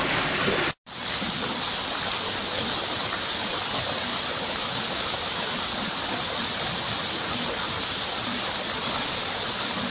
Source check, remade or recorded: recorded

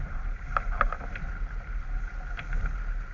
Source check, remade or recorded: recorded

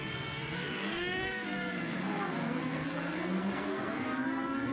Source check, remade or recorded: remade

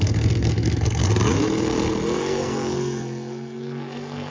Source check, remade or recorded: remade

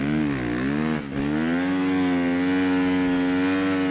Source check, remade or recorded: recorded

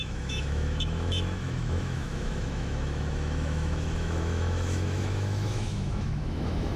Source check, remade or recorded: remade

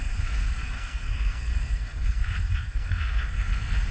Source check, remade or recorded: remade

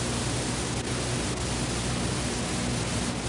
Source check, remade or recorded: recorded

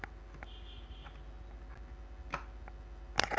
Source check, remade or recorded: recorded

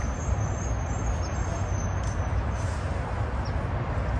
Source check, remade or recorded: recorded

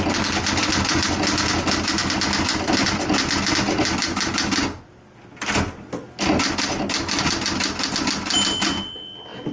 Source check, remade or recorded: recorded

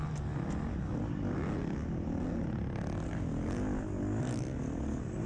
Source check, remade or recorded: recorded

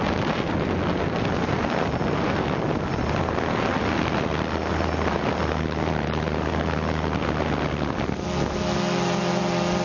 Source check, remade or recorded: recorded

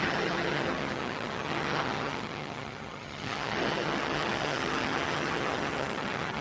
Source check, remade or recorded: remade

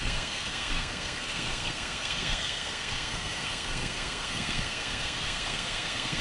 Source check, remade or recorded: remade